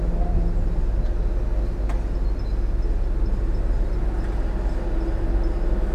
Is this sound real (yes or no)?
yes